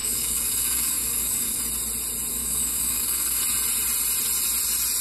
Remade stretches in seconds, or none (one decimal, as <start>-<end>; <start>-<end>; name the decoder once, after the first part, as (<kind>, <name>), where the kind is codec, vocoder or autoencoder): 0.0-1.6 (codec, DAC); 2.3-3.4